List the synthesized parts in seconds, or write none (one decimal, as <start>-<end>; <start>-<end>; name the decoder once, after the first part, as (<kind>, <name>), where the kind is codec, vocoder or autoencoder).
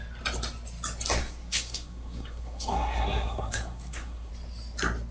1.2-4.3 (codec, SNAC)